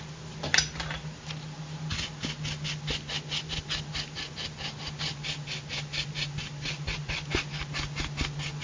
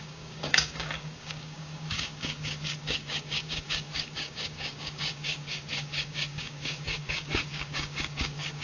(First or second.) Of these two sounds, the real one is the first